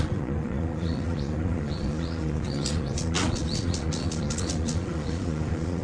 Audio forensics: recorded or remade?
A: remade